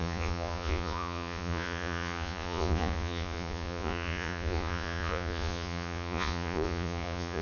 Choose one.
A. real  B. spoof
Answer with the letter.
B